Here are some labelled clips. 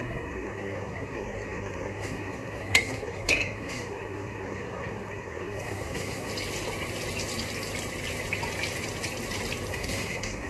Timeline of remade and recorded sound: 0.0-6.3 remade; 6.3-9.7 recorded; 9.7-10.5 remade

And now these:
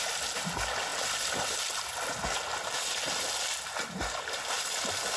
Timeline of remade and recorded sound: 0.0-5.2 recorded